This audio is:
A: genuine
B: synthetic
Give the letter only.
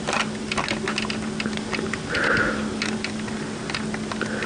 A